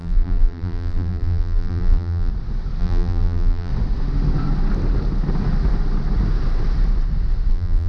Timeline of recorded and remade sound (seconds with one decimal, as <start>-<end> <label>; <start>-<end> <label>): 0.0-2.3 remade; 2.3-2.8 recorded; 2.8-3.7 remade; 3.7-7.5 recorded; 7.5-7.9 remade